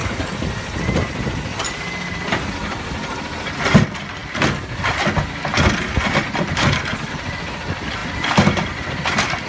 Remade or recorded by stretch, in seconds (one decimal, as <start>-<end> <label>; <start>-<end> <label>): 0.0-9.5 recorded